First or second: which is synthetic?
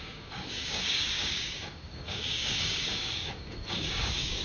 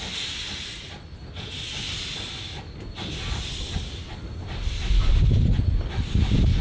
first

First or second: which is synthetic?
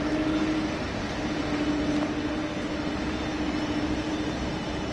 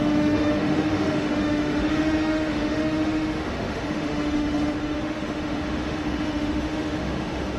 second